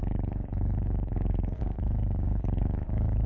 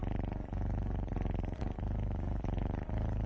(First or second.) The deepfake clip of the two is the first